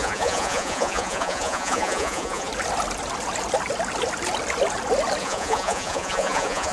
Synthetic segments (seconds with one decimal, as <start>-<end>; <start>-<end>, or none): 0.0-2.5; 5.2-6.7